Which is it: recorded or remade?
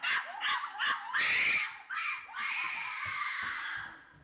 recorded